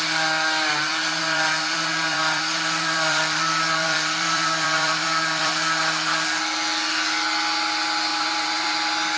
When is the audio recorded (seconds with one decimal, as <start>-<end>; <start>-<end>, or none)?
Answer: 0.0-0.9; 5.5-8.1; 8.7-9.2